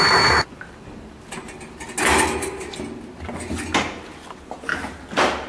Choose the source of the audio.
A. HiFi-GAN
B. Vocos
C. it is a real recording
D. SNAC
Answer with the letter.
C